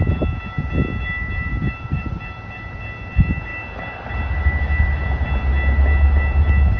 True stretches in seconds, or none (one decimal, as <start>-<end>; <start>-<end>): 0.0-1.5; 2.1-6.8